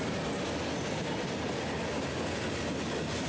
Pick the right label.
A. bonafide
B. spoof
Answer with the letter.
A